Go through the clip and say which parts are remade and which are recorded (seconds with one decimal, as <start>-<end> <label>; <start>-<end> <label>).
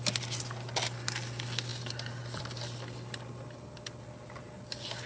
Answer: 0.0-5.1 recorded